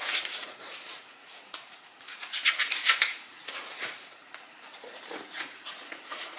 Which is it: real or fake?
fake